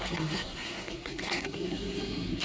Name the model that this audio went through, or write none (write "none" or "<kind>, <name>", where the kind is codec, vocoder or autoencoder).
codec, SNAC